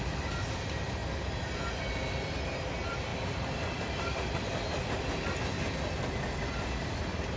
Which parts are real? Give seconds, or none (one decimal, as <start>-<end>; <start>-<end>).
0.0-3.1; 5.4-7.4